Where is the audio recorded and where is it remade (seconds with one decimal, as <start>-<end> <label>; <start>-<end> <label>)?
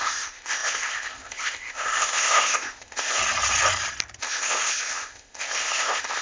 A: 0.0-3.2 remade; 3.2-4.2 recorded; 4.2-6.2 remade